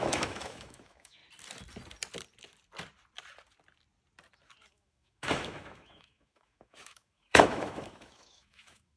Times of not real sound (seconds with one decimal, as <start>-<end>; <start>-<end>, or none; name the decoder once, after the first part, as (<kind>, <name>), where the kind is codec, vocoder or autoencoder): 0.0-1.2 (autoencoder, DAC-VAE); 4.7-9.0